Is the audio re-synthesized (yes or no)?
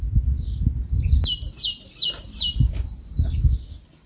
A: no